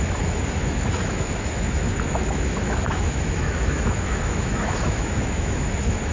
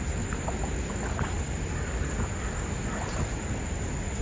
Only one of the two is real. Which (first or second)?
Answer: second